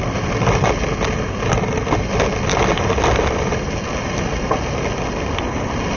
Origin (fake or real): real